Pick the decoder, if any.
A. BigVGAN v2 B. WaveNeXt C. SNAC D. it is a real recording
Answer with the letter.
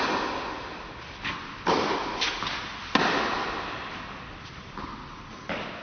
D